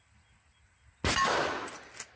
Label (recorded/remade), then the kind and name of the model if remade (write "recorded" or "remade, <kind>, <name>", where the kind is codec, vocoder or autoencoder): recorded